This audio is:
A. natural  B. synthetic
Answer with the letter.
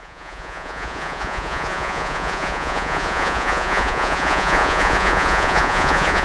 B